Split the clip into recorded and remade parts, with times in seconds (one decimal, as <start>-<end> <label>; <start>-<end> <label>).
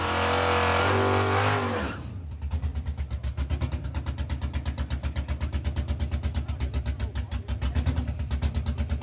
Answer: 0.0-9.0 recorded